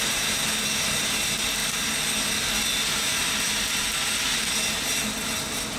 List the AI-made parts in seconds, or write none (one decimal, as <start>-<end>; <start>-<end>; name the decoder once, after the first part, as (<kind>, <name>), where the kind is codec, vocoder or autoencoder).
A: none